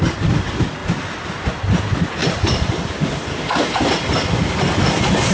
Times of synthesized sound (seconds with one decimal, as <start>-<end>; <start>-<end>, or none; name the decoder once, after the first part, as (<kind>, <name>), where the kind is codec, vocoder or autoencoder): 2.2-4.6 (vocoder, BigVGAN v2)